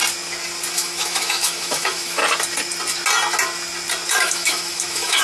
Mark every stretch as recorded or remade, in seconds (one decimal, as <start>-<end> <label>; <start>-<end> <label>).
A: 0.0-0.7 recorded; 0.7-2.2 remade; 2.2-4.1 recorded; 4.1-5.2 remade